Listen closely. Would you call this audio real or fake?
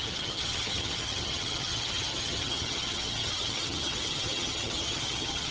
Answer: fake